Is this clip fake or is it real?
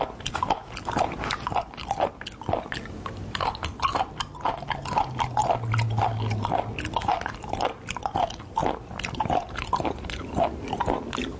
real